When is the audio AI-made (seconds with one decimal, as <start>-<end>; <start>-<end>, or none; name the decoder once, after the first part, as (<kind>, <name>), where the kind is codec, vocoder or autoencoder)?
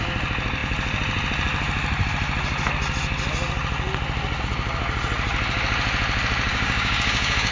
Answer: 6.5-7.5 (codec, DAC)